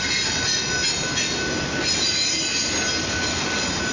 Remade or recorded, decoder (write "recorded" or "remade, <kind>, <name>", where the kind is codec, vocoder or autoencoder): recorded